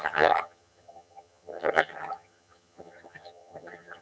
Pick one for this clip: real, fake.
fake